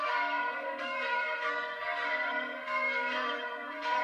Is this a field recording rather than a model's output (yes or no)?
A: no